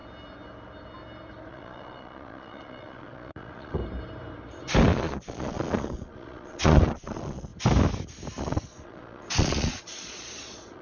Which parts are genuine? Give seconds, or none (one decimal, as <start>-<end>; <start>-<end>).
0.0-1.5; 3.8-4.9; 7.5-8.4